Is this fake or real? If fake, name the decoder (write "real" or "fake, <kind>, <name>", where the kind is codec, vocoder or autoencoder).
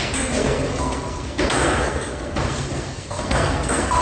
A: fake, codec, SNAC